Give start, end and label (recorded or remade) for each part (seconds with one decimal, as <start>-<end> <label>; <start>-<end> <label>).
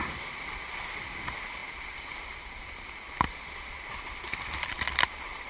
0.0-5.5 recorded